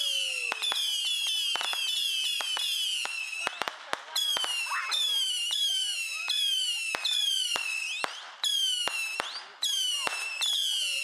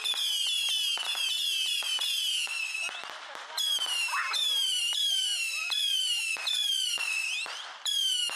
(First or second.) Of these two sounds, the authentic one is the first